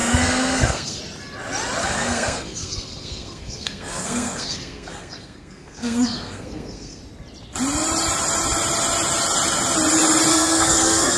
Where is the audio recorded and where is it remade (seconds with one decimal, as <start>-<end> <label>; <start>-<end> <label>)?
0.0-1.0 remade; 1.0-1.8 recorded; 1.8-7.0 remade; 7.0-10.3 recorded; 10.3-11.2 remade